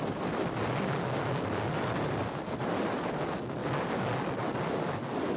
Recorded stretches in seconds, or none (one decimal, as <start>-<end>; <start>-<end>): 0.0-5.4